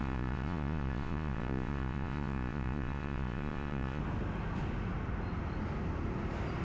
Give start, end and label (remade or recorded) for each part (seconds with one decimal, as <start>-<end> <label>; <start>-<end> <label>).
0.0-4.0 remade; 4.0-6.6 recorded